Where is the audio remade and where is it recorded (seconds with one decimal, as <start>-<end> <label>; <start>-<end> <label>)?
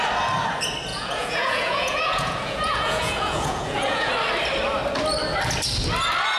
0.0-0.9 recorded; 0.9-4.1 remade; 4.1-6.4 recorded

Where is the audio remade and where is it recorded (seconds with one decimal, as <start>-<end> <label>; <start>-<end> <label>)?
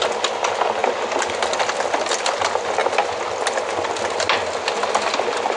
0.0-5.6 recorded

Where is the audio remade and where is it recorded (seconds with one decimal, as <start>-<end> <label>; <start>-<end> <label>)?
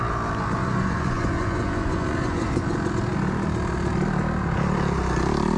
0.0-0.6 recorded; 0.6-2.7 remade; 2.7-5.6 recorded